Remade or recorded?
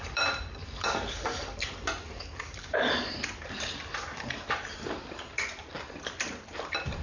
remade